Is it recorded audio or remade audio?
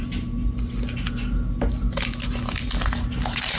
recorded